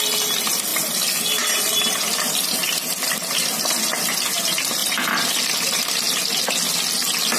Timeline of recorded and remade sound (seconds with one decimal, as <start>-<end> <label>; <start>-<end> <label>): 0.0-0.7 recorded; 0.7-3.8 remade; 3.8-4.8 recorded; 4.8-6.5 remade; 6.5-7.4 recorded